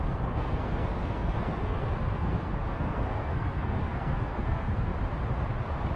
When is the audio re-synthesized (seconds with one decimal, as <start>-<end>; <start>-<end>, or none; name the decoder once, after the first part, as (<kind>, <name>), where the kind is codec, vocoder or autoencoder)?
0.0-4.9 (codec, SNAC)